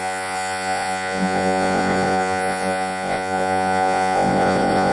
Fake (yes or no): yes